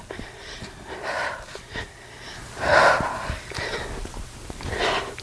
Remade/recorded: recorded